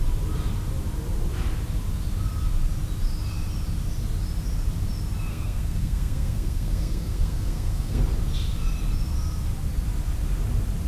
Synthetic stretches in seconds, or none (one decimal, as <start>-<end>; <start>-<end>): 5.3-8.0